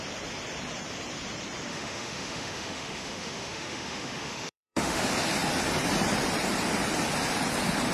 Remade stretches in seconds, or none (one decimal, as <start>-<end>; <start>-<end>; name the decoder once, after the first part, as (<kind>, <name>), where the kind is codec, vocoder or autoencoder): 1.7-5.0 (autoencoder, DAC-VAE)